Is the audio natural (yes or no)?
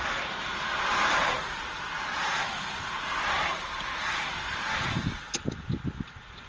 yes